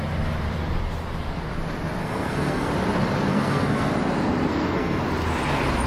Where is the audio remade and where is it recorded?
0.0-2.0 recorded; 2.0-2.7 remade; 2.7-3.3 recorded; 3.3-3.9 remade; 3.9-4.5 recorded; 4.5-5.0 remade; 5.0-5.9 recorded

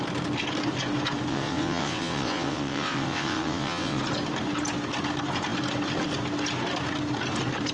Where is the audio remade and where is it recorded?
0.0-1.3 recorded; 1.3-4.0 remade; 4.0-7.7 recorded

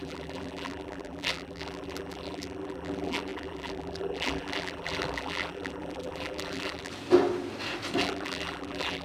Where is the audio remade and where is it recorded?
0.0-6.9 remade; 6.9-8.0 recorded; 8.0-9.0 remade

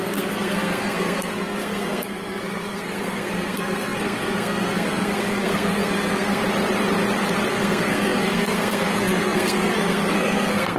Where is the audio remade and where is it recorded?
0.0-6.4 remade; 6.4-7.5 recorded; 7.5-10.8 remade

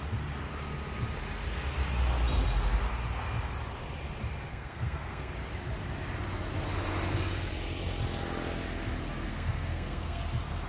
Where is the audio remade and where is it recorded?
0.0-4.5 recorded; 4.5-5.3 remade; 5.3-9.3 recorded; 9.3-10.2 remade; 10.2-10.7 recorded

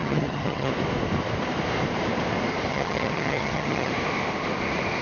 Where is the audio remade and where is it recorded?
0.0-0.7 remade; 0.7-2.7 recorded; 2.7-3.9 remade; 3.9-5.0 recorded

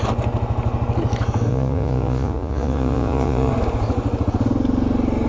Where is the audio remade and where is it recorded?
0.0-1.5 recorded; 1.5-3.5 remade; 3.5-5.3 recorded